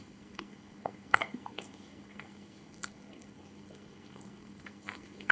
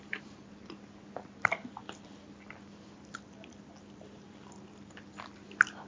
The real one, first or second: second